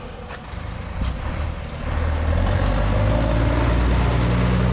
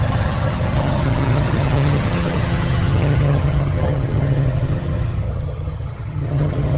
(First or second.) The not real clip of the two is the second